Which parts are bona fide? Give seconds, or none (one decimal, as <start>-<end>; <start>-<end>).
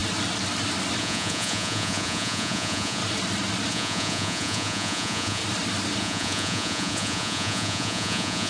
0.0-1.0; 3.0-3.7; 5.4-6.0